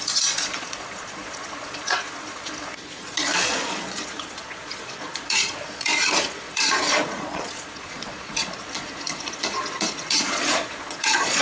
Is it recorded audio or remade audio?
remade